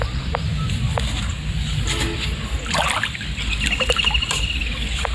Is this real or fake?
real